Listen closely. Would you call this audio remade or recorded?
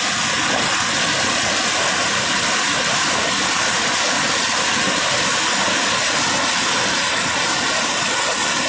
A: recorded